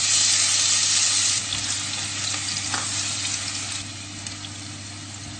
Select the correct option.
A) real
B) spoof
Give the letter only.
A